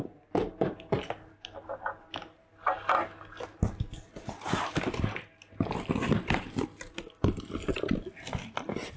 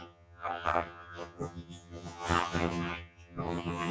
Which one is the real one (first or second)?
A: first